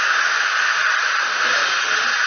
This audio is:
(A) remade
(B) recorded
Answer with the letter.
B